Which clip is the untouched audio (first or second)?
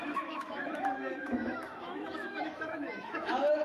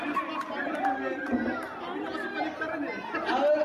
second